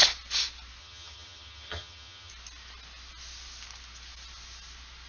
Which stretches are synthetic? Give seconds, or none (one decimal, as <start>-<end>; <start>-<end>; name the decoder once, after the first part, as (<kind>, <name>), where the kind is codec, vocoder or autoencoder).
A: 0.8-2.3 (vocoder, HiFi-GAN)